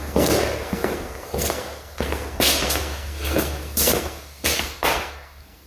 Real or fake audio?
fake